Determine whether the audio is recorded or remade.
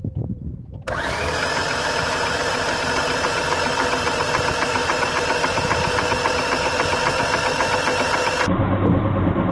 remade